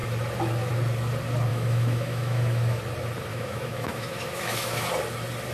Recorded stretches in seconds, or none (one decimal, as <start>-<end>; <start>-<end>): 0.0-1.5; 2.8-3.3; 4.9-5.5